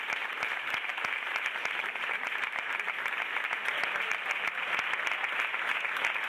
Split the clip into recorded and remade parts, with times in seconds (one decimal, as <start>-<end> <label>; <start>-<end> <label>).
0.0-6.3 recorded